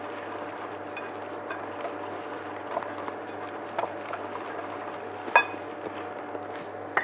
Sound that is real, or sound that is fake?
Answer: real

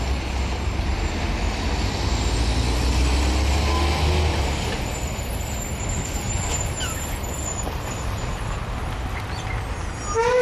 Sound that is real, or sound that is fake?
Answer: real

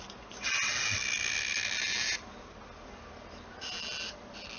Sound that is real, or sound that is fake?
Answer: real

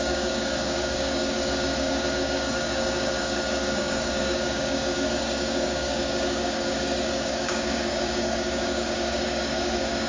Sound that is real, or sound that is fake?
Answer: fake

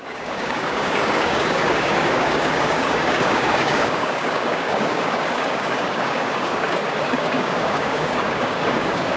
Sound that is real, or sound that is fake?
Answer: fake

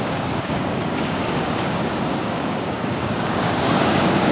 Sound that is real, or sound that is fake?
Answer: fake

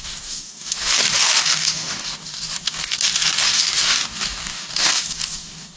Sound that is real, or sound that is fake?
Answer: fake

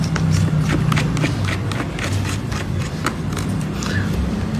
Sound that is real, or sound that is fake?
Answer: real